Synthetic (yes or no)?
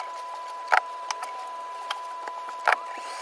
no